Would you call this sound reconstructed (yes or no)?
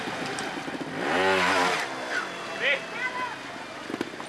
no